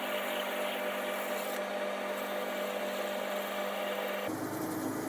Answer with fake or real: real